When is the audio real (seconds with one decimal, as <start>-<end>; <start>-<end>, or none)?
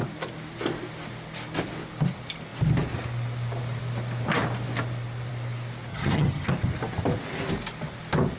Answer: 0.0-5.9; 6.5-8.4